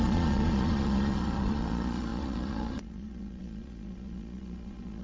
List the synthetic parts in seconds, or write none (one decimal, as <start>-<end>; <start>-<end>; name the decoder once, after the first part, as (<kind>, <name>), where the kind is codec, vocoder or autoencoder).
0.0-5.0 (vocoder, Vocos)